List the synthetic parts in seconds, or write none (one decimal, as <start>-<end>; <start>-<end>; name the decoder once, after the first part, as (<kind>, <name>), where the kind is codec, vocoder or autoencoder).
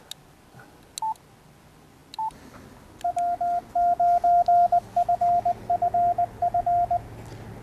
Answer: none